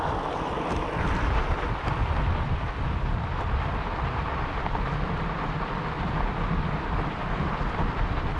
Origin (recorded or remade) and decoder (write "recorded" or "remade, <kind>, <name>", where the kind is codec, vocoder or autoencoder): remade, vocoder, BigVGAN v2